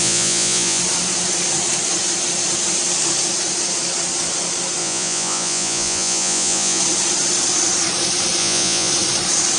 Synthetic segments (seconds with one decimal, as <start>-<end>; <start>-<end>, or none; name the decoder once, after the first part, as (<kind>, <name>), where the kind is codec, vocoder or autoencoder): 0.0-0.8 (vocoder, Vocos); 4.8-6.8; 8.4-8.9